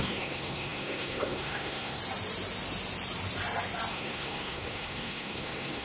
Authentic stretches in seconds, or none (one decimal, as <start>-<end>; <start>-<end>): 2.0-3.9